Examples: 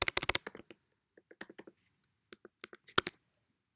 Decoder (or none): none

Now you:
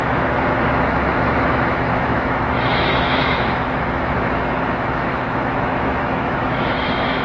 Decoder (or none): autoencoder, DAC-VAE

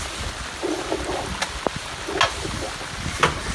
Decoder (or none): none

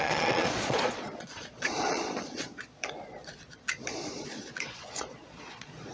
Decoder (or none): vocoder, Vocos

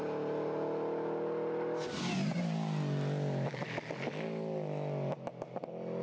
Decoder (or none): none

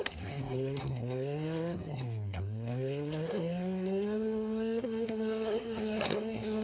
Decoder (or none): codec, SNAC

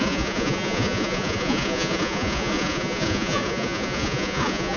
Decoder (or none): vocoder, Vocos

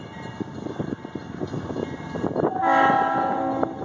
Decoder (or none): none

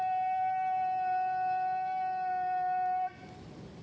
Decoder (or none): none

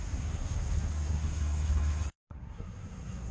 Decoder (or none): codec, SNAC